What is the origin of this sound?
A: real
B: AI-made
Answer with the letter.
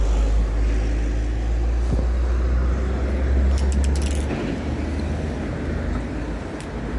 A